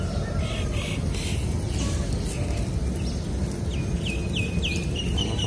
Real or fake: real